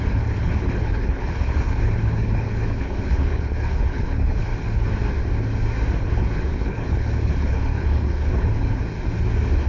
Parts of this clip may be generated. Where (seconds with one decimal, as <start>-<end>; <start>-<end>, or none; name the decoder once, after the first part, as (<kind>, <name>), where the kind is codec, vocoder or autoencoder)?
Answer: 0.0-4.5 (codec, HILCodec); 6.0-8.8